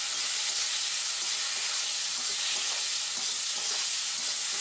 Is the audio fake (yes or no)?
no